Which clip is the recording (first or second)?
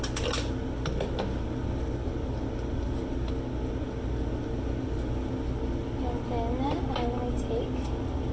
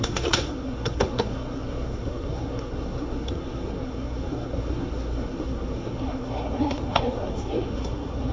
first